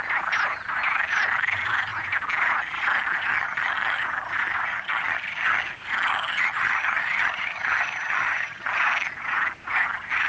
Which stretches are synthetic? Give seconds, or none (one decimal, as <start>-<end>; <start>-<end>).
3.3-4.0; 4.7-5.6; 6.1-8.7